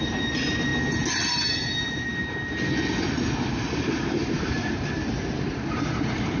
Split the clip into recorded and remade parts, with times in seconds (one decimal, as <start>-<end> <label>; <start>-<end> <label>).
0.0-0.7 remade; 0.7-1.3 recorded; 1.3-2.1 remade; 2.1-3.6 recorded; 3.6-6.4 remade